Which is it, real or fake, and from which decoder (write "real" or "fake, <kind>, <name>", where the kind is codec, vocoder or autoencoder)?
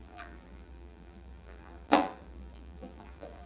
fake, vocoder, BigVGAN v2